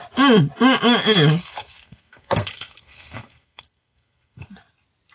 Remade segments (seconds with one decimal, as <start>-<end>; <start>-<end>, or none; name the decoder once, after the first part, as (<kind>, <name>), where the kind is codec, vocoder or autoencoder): 1.4-4.5 (codec, SNAC)